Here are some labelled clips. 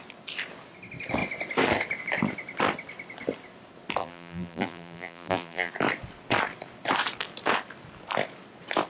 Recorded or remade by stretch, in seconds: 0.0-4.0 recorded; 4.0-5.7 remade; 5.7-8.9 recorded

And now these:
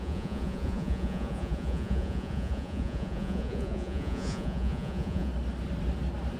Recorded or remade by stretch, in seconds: 0.0-5.3 remade; 5.3-6.4 recorded

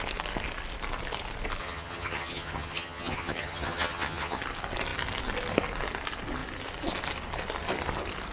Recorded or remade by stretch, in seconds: 0.0-1.6 recorded; 1.6-4.4 remade; 4.4-8.3 recorded

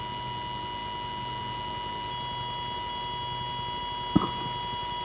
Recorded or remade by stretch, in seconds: 0.0-5.0 recorded

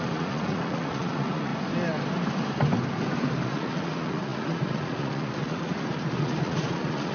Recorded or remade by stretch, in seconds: 0.0-1.5 remade; 1.5-3.4 recorded; 3.4-7.1 remade

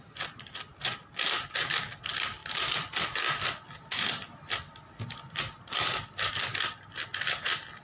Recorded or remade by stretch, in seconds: 0.0-7.8 recorded